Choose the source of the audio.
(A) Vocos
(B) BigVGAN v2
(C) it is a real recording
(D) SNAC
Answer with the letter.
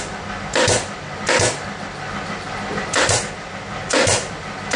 C